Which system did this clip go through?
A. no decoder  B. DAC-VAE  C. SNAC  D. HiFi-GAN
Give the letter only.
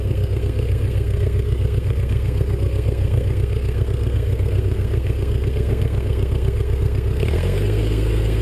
C